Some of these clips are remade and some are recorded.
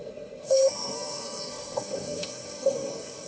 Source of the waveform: remade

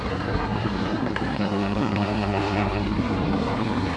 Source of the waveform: remade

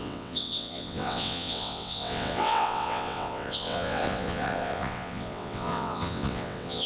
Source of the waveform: remade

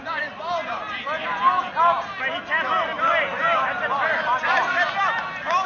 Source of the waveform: recorded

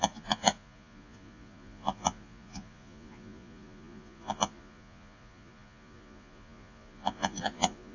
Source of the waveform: remade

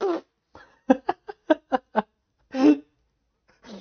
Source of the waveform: recorded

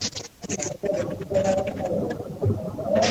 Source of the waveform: recorded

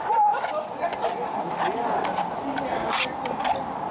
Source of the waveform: recorded